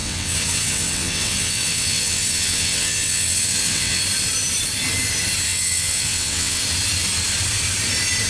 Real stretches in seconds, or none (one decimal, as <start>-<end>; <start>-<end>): 4.0-5.5; 6.6-8.3